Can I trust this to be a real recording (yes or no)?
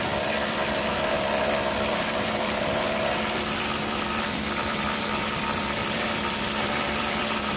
no